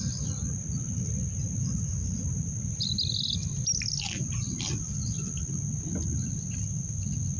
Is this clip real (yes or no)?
yes